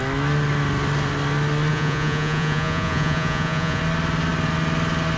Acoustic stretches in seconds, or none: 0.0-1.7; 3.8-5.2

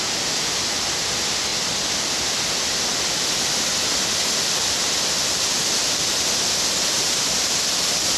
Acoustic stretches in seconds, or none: 0.0-8.2